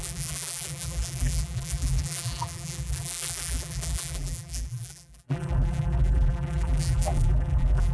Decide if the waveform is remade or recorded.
remade